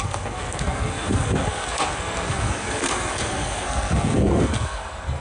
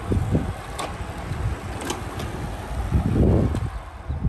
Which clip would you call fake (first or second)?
first